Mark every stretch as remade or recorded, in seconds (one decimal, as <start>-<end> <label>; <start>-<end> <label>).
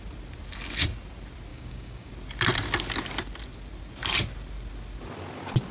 0.0-1.5 recorded; 1.5-2.1 remade; 2.1-5.7 recorded